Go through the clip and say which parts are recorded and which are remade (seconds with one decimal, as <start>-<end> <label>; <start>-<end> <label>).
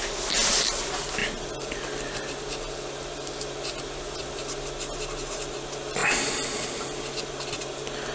0.0-8.1 recorded